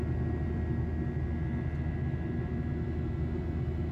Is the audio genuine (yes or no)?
yes